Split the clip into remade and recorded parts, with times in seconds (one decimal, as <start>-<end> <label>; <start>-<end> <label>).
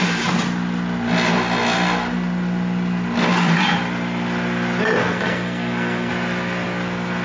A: 0.0-5.0 recorded; 5.0-6.1 remade; 6.1-7.2 recorded